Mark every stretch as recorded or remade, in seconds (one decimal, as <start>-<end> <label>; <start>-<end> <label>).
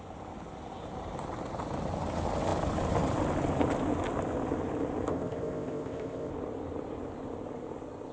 0.0-5.1 recorded; 5.1-6.3 remade; 6.3-8.1 recorded